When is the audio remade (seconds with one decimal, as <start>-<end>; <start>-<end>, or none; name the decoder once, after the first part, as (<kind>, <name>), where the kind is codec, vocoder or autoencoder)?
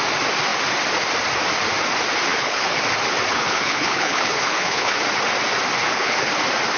2.3-2.8 (codec, HILCodec); 3.3-5.0; 5.8-6.3